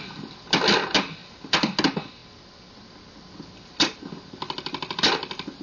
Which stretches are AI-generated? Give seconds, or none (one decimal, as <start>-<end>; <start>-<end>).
none